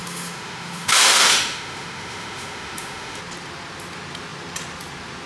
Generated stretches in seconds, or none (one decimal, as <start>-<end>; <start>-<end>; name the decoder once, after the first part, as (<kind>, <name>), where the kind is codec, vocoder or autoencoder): 0.0-3.2 (autoencoder, DAC-VAE)